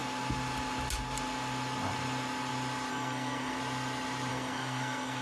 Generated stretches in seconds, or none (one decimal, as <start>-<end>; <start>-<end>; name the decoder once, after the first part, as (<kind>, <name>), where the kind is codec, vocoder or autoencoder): 2.9-3.6 (codec, SNAC); 4.3-5.2